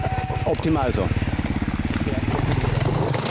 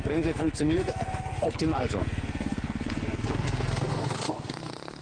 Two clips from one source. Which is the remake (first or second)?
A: second